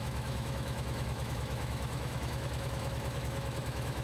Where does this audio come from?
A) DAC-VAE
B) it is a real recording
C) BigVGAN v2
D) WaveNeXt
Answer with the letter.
A